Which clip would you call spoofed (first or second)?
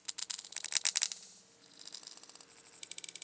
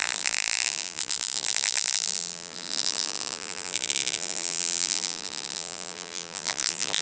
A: second